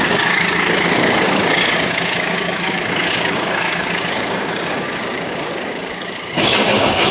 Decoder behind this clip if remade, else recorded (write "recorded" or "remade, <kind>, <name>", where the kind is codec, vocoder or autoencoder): remade, codec, DAC